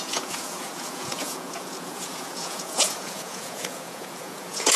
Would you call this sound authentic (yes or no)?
no